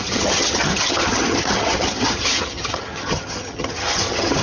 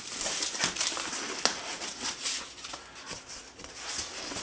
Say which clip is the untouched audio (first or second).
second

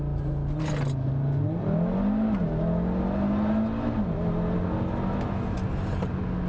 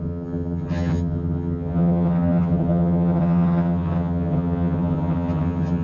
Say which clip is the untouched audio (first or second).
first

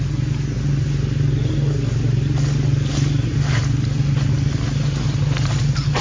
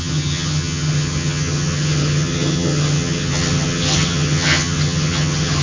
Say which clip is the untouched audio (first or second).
first